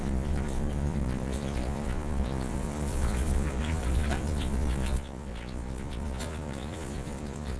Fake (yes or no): yes